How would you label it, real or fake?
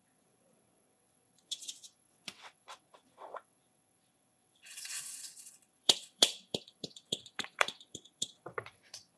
fake